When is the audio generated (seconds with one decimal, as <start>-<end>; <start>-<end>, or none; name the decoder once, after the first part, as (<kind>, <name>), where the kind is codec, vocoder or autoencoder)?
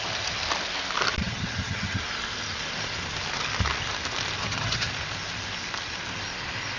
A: 1.2-2.0 (vocoder, HiFi-GAN); 4.4-4.9